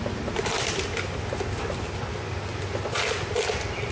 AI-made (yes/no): no